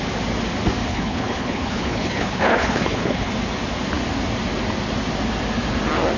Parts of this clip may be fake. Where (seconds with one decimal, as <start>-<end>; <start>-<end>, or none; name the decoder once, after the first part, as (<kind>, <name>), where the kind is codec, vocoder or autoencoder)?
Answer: 0.9-3.3 (codec, HILCodec)